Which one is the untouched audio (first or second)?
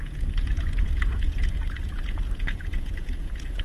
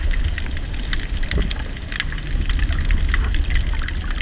second